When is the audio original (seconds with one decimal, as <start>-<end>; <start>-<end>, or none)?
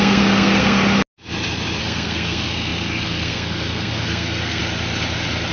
0.8-1.8; 4.6-5.5